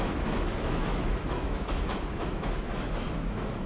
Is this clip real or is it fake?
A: fake